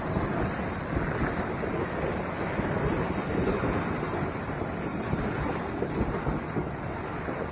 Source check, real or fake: real